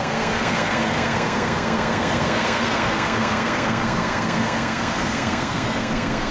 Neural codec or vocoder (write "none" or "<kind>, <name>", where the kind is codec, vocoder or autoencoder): codec, SNAC